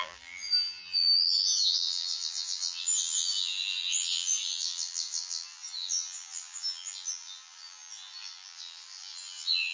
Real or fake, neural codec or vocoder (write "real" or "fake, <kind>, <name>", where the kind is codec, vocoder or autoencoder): fake, vocoder, BigVGAN v2